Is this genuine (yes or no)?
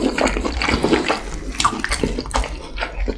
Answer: yes